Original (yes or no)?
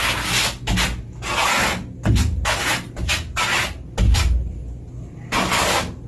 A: yes